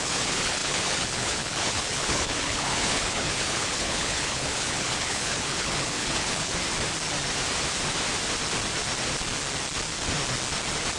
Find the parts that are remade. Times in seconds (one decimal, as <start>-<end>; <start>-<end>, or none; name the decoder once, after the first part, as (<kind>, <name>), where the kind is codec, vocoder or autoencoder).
0.0-6.5 (codec, HILCodec)